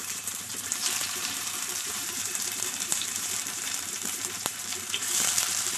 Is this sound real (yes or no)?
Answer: no